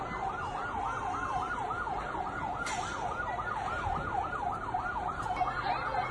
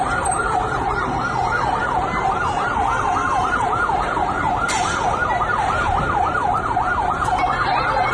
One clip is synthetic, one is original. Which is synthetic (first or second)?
second